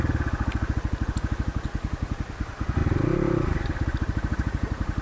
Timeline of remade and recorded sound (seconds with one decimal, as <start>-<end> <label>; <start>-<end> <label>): 0.0-2.8 recorded; 2.8-5.0 remade